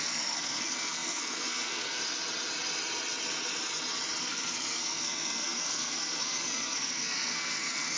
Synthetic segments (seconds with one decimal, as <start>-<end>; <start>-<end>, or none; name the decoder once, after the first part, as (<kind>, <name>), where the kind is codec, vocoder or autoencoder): 0.0-2.0 (codec, SNAC); 4.2-8.0